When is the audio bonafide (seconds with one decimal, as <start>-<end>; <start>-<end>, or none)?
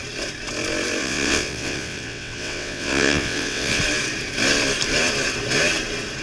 0.0-1.0; 3.8-6.2